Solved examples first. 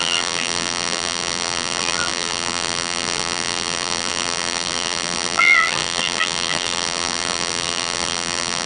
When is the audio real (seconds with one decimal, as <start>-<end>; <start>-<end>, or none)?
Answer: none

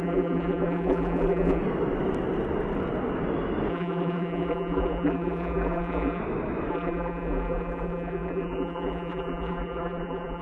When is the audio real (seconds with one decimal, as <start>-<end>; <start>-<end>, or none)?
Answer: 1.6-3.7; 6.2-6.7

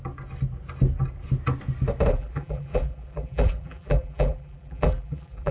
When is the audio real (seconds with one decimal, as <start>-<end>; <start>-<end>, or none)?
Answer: 0.0-2.1

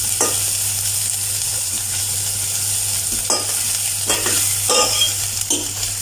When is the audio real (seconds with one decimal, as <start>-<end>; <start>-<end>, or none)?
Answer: 0.0-1.5; 2.0-6.0

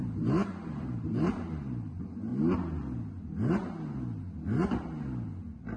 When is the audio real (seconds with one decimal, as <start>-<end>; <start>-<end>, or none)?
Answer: 2.3-5.8

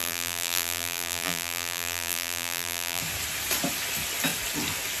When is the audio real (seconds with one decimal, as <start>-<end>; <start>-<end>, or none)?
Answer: 3.0-5.0

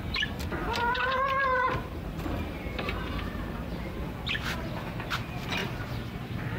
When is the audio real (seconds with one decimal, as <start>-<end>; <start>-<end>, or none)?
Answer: 0.0-1.4; 4.0-5.6